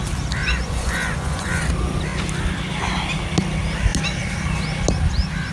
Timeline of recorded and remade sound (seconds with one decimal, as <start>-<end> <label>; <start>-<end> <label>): 0.0-0.4 recorded; 0.4-1.6 remade; 1.6-5.5 recorded